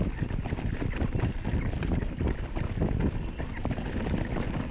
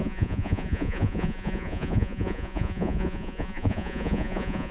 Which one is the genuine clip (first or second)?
first